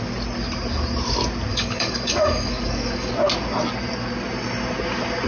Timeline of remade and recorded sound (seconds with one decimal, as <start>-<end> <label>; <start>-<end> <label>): 0.0-1.5 recorded; 1.5-3.1 remade; 3.1-5.3 recorded